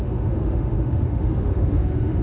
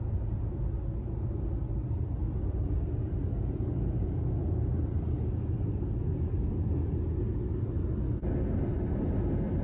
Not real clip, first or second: first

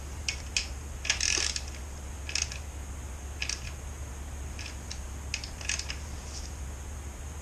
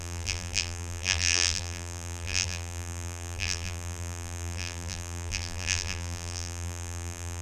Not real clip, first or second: second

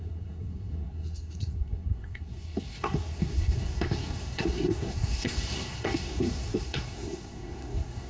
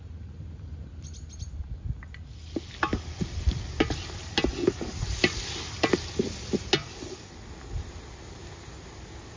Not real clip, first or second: first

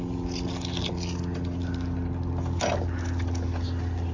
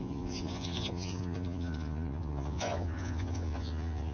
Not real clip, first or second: second